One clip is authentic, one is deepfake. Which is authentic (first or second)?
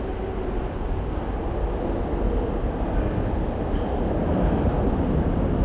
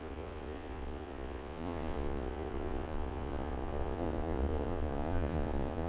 first